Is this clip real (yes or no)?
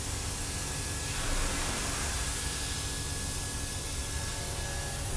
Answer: yes